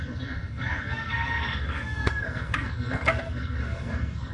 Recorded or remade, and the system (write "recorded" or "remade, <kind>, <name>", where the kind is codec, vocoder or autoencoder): remade, codec, SNAC